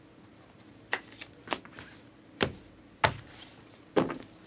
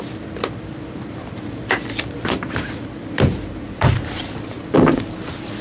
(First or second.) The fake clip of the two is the second